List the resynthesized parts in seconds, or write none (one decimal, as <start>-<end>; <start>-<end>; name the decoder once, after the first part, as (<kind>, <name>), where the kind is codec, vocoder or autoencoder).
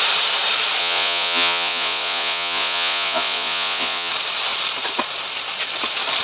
0.8-4.1 (vocoder, Vocos)